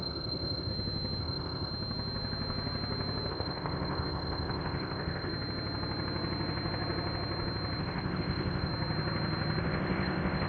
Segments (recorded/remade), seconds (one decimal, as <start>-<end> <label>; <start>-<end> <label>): 0.0-0.7 remade; 0.7-1.2 recorded; 1.2-1.7 remade; 1.7-3.3 recorded; 3.3-5.3 remade; 5.3-7.8 recorded; 7.8-8.7 remade; 8.7-9.6 recorded; 9.6-10.5 remade